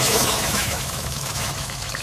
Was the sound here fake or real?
fake